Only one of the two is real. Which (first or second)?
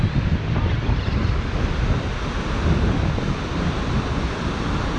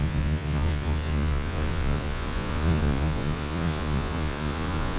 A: first